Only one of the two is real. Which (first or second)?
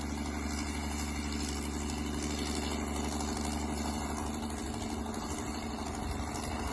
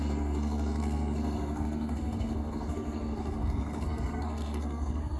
first